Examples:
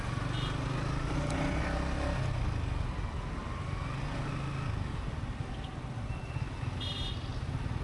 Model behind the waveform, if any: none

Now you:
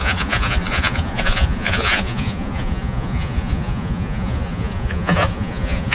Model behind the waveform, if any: vocoder, Vocos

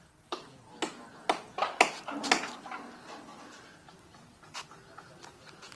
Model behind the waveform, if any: none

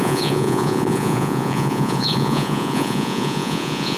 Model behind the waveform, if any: vocoder, Vocos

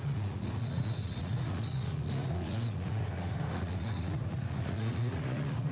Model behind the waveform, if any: vocoder, Vocos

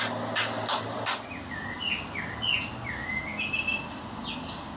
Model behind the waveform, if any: none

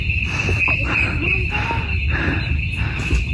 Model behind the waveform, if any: none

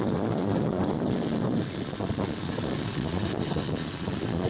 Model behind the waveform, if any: vocoder, Vocos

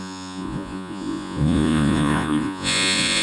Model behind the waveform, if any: vocoder, Vocos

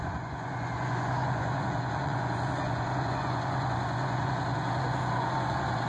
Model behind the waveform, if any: vocoder, Vocos